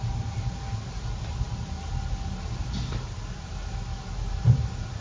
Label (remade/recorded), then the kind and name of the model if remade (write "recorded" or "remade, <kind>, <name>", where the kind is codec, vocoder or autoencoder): recorded